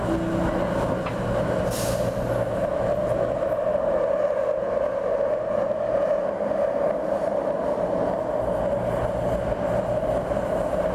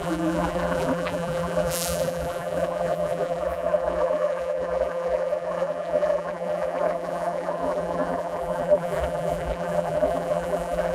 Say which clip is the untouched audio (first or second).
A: first